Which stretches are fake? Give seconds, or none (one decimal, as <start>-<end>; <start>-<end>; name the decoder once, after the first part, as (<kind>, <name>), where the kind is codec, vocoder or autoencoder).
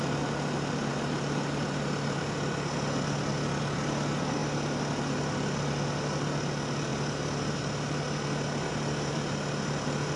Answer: none